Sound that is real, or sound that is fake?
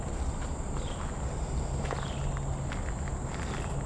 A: real